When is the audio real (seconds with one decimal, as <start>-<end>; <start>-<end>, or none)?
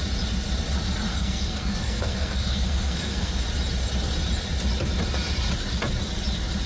0.0-1.1; 3.3-6.7